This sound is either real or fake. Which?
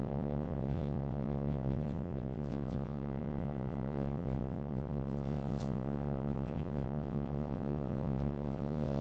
fake